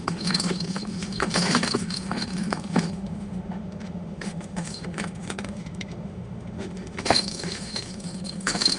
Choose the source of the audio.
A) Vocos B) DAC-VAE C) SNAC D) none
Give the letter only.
B